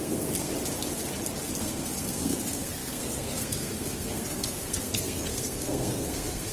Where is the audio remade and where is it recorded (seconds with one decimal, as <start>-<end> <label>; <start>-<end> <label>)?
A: 0.0-0.5 remade; 0.5-1.6 recorded; 1.6-6.5 remade